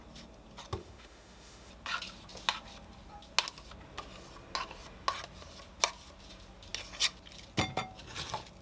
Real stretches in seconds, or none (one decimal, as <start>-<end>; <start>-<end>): 0.0-0.8; 1.7-8.6